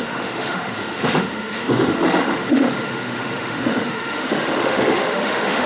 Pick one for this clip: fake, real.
fake